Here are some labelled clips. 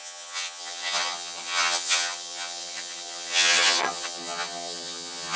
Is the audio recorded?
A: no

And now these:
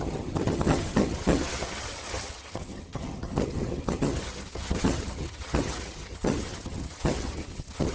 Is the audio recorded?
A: no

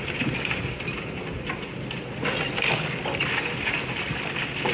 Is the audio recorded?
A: yes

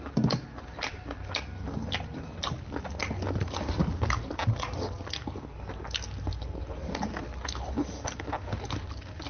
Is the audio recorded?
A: yes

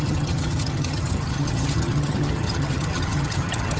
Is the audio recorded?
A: no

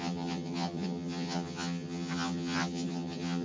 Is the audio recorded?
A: no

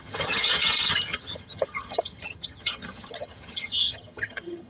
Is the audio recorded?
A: no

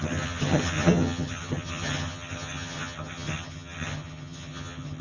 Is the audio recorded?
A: no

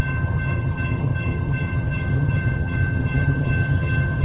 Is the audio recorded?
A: no